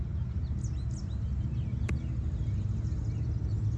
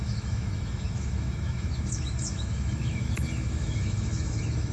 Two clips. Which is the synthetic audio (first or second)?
second